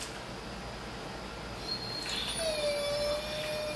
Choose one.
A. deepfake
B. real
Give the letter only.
B